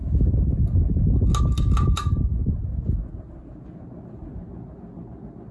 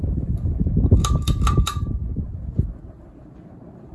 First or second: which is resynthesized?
second